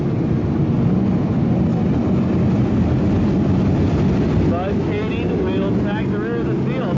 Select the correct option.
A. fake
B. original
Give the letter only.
B